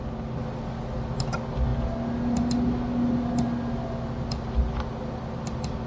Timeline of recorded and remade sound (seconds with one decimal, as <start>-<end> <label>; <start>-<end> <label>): 0.0-5.9 recorded